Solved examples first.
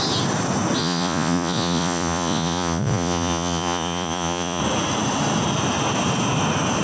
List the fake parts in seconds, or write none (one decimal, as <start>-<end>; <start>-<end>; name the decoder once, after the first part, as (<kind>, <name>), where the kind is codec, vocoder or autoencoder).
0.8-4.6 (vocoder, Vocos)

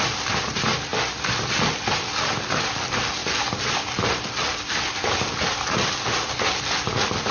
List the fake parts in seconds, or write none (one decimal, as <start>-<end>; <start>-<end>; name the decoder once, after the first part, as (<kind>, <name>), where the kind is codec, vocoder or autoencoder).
none

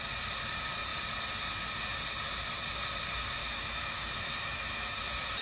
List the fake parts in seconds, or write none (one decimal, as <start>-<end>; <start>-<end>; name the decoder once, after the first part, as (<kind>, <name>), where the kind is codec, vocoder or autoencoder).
3.4-5.0 (autoencoder, DAC-VAE)

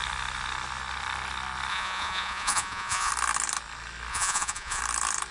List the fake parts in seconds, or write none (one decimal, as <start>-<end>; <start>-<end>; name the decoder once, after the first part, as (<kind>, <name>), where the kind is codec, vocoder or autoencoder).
1.7-3.1 (vocoder, Vocos); 4.1-4.8

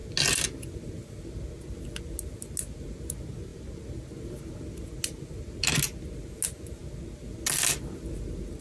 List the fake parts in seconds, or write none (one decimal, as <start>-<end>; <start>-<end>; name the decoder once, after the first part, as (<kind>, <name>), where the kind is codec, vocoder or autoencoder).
none

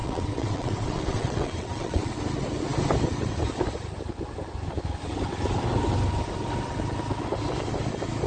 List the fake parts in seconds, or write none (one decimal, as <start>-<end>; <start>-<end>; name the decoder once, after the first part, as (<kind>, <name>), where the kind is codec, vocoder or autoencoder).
0.0-2.2 (vocoder, WaveNeXt)